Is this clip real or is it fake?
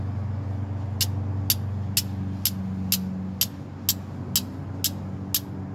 real